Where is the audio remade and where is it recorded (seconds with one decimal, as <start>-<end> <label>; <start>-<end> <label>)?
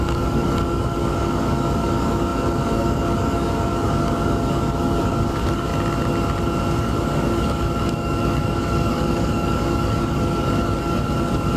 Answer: 0.0-5.7 remade; 5.7-6.8 recorded; 6.8-11.6 remade